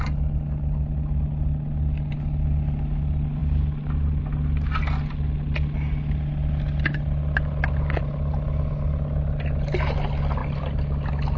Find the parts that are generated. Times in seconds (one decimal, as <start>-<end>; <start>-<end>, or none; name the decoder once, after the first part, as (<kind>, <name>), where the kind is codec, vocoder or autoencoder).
none